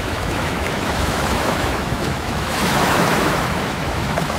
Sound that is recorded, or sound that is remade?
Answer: remade